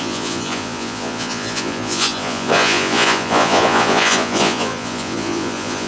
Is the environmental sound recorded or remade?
remade